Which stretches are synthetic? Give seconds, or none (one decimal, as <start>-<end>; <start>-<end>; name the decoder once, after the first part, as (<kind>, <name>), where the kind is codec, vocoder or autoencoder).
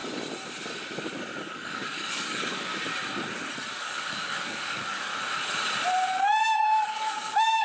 1.4-2.7 (codec, DAC); 3.7-5.1; 6.1-7.6